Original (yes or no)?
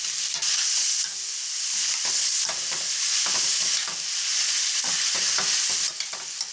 yes